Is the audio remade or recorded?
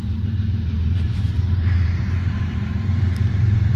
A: remade